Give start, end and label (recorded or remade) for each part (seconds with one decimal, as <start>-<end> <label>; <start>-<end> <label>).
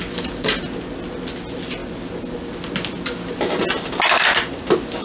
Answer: 0.0-5.0 recorded